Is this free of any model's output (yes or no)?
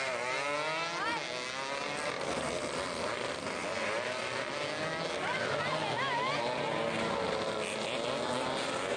yes